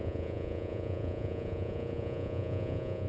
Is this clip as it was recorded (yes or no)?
no